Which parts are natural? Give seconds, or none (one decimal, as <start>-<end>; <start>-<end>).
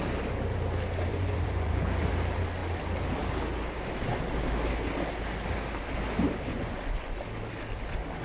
0.0-1.1; 2.1-6.5; 7.1-8.2